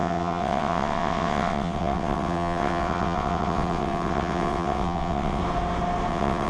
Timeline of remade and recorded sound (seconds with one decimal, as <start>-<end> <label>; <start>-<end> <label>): 0.0-5.4 remade; 5.4-6.1 recorded; 6.1-6.5 remade